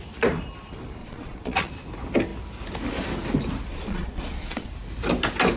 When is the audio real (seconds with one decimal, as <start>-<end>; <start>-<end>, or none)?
0.0-1.0; 1.7-3.7; 4.7-5.6